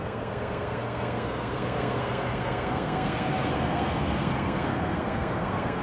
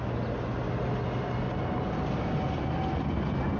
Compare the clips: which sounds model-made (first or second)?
first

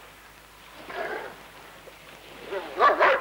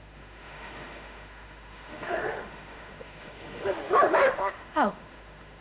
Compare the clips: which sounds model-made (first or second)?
second